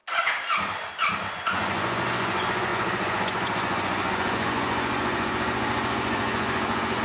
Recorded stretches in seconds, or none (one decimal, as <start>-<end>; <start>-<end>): 0.0-1.3